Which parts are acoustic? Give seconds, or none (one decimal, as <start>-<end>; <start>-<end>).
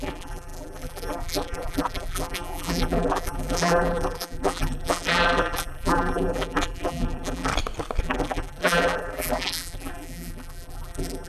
7.5-8.0